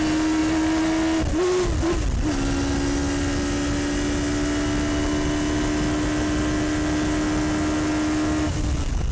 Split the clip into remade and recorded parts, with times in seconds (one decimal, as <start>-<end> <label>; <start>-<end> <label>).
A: 0.0-9.1 recorded